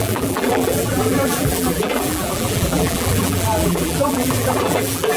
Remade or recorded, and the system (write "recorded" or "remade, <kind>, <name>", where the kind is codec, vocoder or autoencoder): remade, vocoder, BigVGAN v2